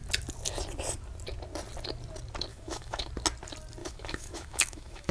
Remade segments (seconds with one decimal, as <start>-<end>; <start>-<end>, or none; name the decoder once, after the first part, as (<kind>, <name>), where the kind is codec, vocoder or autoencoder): 2.5-3.1 (autoencoder, DAC-VAE); 3.8-5.1